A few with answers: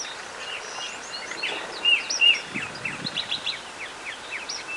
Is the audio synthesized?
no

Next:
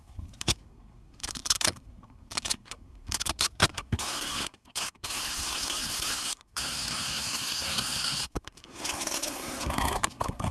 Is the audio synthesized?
yes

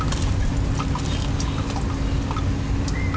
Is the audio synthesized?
no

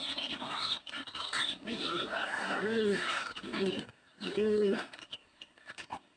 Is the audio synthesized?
yes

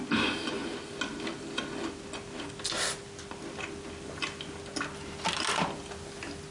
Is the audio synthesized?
no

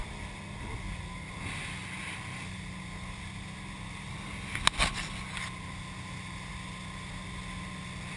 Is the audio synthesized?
no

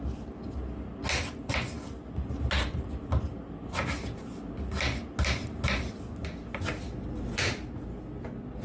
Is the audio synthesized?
no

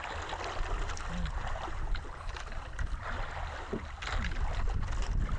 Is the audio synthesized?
no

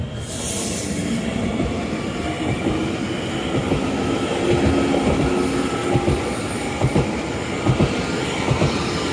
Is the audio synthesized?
no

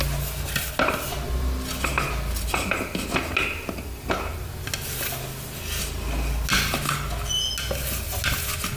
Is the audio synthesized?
no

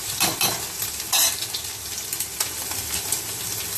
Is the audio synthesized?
no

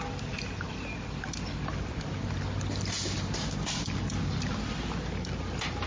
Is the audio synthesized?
no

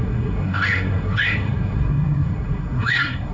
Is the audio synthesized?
yes